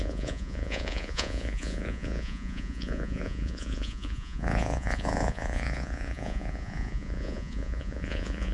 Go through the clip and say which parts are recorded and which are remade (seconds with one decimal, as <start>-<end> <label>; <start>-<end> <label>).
0.0-8.5 remade